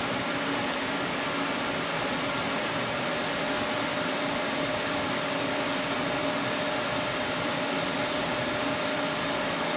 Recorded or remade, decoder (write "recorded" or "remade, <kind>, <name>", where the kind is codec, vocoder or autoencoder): recorded